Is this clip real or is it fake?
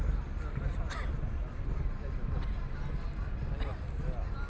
real